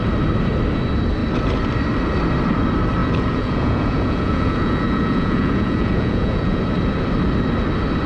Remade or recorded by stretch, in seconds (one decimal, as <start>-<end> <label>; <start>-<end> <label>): 0.0-3.0 recorded; 3.0-6.6 remade; 6.6-8.1 recorded